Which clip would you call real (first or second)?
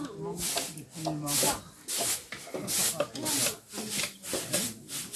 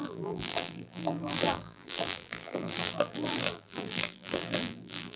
first